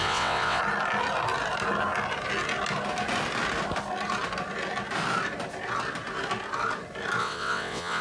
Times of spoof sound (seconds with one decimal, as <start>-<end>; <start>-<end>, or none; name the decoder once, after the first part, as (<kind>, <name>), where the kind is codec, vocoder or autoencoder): 0.0-0.6 (vocoder, WaveNeXt); 7.2-8.0